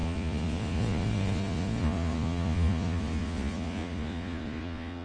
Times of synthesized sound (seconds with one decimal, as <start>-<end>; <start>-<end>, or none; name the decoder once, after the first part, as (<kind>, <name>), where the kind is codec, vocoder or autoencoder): 0.0-5.0 (vocoder, Vocos)